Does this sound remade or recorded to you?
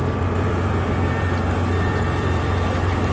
remade